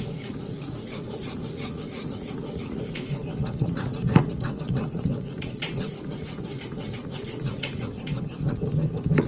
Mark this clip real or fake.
fake